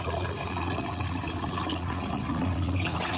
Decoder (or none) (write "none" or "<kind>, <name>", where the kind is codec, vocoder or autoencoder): vocoder, Vocos